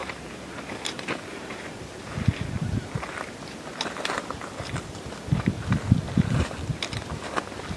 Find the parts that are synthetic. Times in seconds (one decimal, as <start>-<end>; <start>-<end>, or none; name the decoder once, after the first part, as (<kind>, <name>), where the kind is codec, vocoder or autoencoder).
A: 0.0-0.5 (vocoder, BigVGAN v2); 1.3-1.8